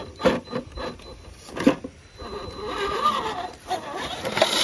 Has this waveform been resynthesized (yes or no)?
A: no